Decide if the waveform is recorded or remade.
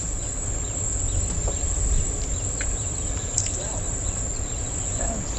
recorded